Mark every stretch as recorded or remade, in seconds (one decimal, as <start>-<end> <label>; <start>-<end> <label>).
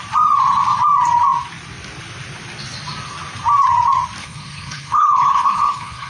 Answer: 0.0-4.2 recorded; 4.2-6.1 remade